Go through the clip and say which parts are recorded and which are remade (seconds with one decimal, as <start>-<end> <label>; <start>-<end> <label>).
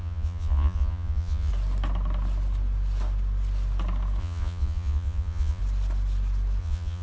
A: 0.0-1.5 remade; 1.5-4.2 recorded; 4.2-5.6 remade; 5.6-6.6 recorded; 6.6-7.0 remade